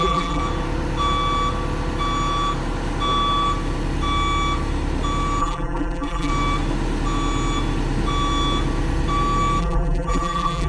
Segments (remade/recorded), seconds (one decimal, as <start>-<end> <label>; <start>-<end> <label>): 0.0-0.4 remade; 0.4-5.4 recorded; 5.4-6.3 remade; 6.3-9.6 recorded; 9.6-10.7 remade